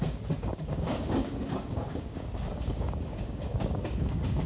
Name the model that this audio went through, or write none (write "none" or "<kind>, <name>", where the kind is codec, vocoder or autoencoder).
codec, DAC